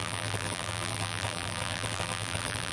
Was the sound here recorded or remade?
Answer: remade